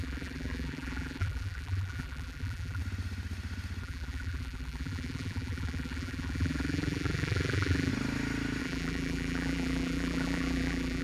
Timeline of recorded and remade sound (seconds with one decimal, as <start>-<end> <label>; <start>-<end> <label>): 0.0-2.8 remade; 2.8-3.8 recorded; 3.8-7.9 remade; 7.9-8.6 recorded; 8.6-11.0 remade